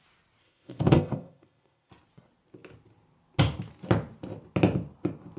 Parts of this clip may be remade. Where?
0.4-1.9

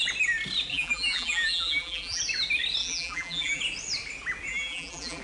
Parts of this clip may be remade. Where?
0.7-2.2; 2.8-3.6; 4.5-5.2

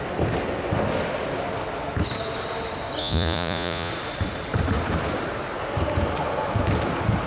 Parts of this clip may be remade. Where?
3.0-3.9